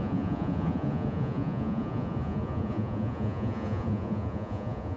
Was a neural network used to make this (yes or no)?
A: yes